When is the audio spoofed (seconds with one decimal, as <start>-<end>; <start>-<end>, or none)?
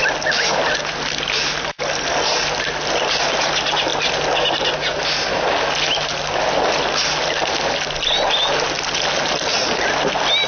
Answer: none